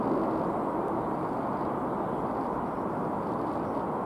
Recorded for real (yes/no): yes